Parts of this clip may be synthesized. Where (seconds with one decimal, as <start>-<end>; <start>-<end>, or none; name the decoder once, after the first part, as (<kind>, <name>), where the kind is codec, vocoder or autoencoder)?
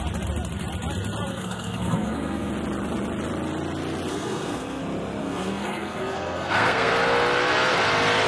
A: 1.3-2.5 (codec, SNAC); 4.1-4.8; 5.2-6.9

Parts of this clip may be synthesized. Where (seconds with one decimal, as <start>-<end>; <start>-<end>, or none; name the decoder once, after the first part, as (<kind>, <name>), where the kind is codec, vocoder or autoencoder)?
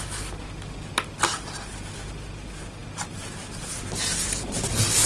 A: none